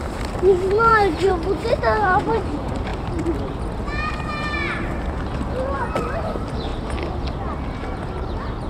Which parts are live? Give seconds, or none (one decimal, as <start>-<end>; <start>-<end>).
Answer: 0.9-1.7; 2.9-5.9; 6.7-8.2